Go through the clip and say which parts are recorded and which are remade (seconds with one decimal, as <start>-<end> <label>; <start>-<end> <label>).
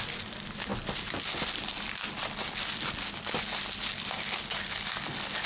0.0-5.5 recorded